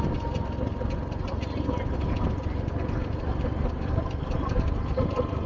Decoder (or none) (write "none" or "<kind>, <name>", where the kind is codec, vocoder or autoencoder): none